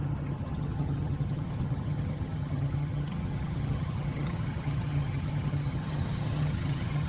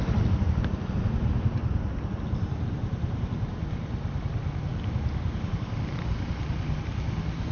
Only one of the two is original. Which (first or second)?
second